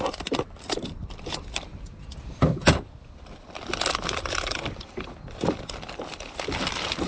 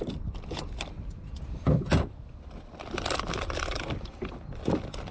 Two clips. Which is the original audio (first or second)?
second